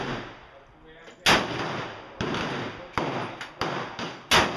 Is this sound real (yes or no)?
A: yes